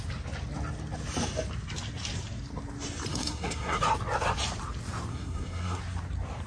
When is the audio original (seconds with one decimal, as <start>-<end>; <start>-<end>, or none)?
0.0-3.1; 3.8-5.1; 5.8-6.5